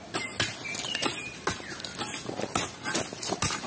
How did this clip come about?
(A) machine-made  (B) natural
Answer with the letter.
B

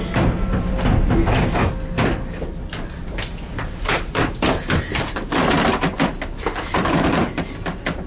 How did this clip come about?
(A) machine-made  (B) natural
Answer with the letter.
B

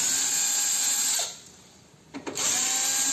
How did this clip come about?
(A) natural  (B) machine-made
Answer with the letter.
B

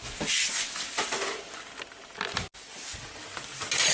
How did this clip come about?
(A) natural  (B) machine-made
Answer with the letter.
A